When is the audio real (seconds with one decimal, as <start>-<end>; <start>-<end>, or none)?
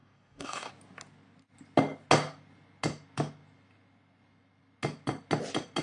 0.7-5.8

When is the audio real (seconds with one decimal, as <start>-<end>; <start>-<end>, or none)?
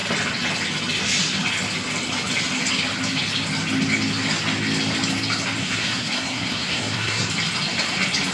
0.0-5.6; 7.3-8.3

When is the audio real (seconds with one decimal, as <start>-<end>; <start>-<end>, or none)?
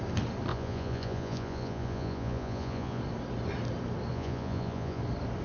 0.0-0.5; 3.0-4.1; 5.0-5.4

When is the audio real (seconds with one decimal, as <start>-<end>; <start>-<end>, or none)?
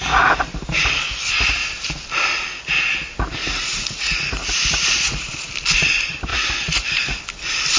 0.0-3.4; 5.5-6.3; 7.2-7.8